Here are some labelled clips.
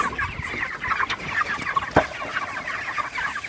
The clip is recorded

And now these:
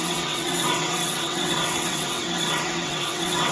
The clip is remade